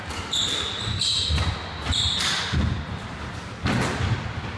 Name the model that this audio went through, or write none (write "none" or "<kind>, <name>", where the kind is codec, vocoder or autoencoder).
none